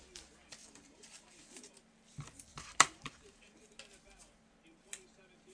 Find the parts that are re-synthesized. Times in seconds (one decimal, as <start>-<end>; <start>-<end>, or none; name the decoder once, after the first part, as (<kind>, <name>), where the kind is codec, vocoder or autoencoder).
0.6-1.7 (vocoder, BigVGAN v2); 2.5-3.7